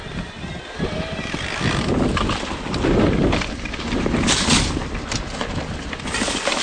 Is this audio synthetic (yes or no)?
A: no